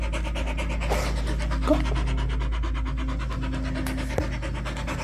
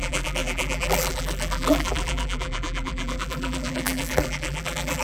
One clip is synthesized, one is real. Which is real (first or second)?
first